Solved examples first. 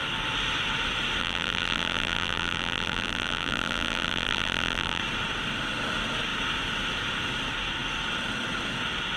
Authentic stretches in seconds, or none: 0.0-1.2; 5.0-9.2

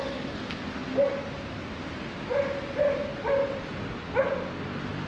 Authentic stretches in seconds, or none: 0.0-5.1

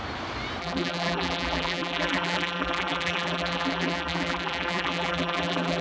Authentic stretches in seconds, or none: 0.0-0.6

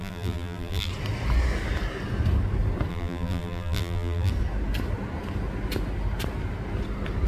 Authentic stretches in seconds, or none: 0.9-2.9; 4.3-7.3

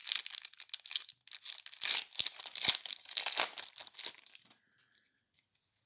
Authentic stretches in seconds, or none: 0.0-2.9